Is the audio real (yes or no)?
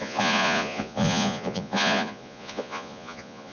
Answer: no